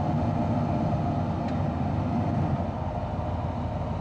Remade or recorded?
recorded